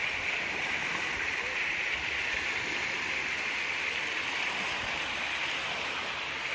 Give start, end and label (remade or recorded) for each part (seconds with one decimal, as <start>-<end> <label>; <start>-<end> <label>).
0.0-6.5 recorded